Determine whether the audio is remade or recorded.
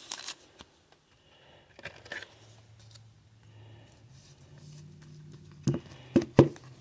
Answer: recorded